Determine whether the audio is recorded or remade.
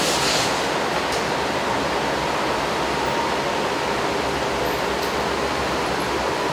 recorded